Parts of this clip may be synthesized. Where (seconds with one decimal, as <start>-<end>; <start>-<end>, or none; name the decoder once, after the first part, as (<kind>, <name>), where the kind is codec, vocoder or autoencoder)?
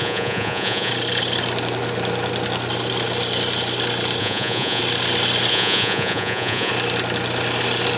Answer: 0.0-0.9 (vocoder, Vocos); 4.2-4.8; 5.5-6.7